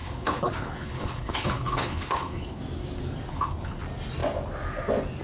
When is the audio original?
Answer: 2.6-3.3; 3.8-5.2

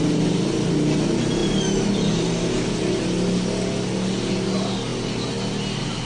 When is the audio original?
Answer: 0.0-6.1

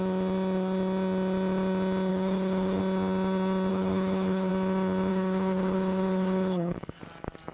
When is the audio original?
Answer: 0.0-2.1; 2.8-3.7; 4.5-5.1; 7.0-7.5

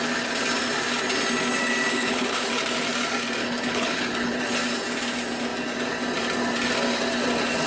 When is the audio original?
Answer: 0.0-2.0; 2.5-3.4; 4.4-7.7

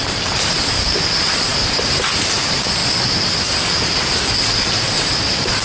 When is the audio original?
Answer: 0.0-5.6

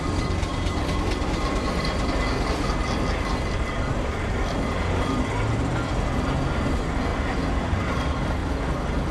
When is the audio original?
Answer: 0.0-9.1